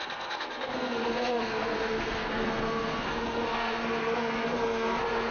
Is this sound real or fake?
fake